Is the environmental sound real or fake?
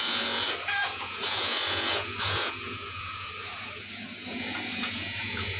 fake